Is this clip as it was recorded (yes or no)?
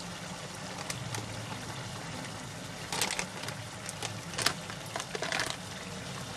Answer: yes